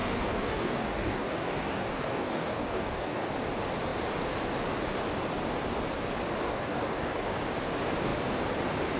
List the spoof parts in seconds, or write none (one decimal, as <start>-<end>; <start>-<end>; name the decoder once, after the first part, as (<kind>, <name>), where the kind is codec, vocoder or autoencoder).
0.0-3.3 (codec, DAC); 6.4-7.4

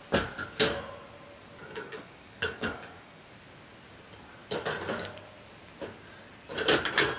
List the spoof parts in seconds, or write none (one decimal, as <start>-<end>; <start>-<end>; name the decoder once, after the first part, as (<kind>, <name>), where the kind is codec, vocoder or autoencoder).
1.6-3.2 (codec, DAC)

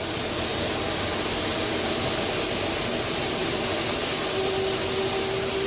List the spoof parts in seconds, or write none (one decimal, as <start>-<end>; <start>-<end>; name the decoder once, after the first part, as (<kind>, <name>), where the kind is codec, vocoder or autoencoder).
none

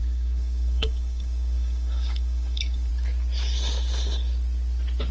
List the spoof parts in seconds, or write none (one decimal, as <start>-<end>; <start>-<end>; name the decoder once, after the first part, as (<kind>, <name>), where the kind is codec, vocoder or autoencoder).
0.0-2.9 (codec, DAC)

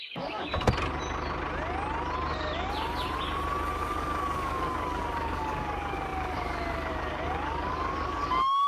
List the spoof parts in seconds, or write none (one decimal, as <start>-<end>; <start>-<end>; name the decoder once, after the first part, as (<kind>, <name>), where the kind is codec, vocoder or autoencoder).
0.0-0.5 (codec, DAC); 3.8-8.7